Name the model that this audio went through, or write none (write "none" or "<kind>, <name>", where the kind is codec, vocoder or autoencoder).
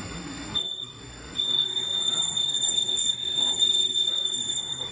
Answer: codec, SNAC